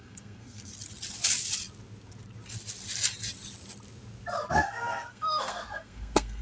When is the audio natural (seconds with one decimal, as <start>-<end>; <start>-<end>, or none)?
0.7-4.5